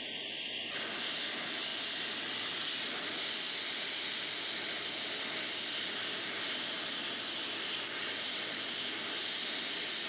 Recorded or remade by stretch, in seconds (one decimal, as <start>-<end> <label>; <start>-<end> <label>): 0.0-10.1 recorded